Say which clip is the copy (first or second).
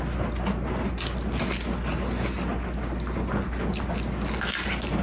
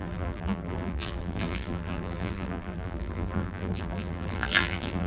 second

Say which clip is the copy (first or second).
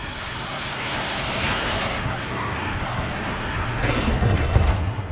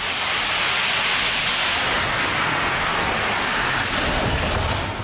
first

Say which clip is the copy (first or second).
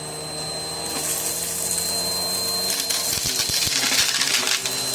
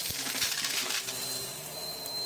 second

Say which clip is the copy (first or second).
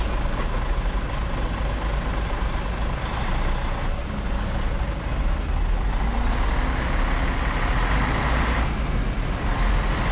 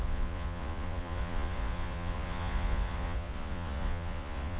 second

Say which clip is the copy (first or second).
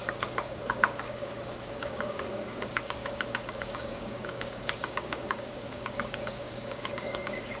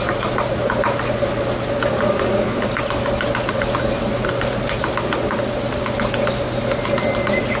first